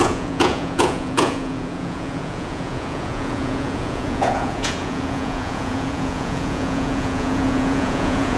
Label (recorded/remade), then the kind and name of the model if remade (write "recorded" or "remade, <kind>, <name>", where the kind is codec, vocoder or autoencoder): remade, vocoder, Vocos